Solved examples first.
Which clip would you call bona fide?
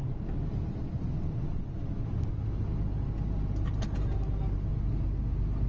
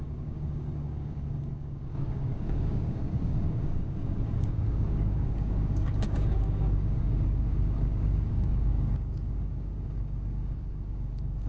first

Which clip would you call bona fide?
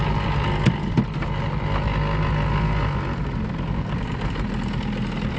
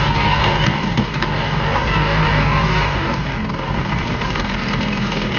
first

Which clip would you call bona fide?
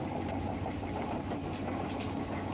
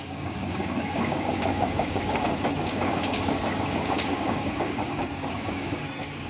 first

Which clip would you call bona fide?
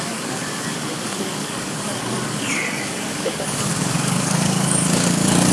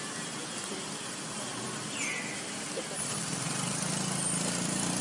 second